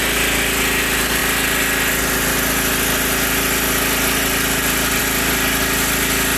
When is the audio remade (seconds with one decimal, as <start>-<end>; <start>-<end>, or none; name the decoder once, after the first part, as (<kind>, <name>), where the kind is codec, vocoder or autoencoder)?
none